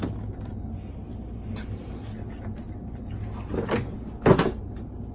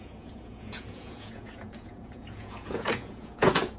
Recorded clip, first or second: first